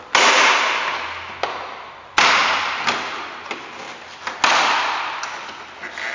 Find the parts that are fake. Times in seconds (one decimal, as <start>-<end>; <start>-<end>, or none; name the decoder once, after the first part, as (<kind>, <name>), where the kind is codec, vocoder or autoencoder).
none